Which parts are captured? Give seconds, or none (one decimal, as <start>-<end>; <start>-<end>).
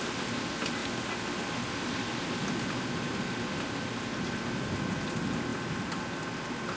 0.0-6.8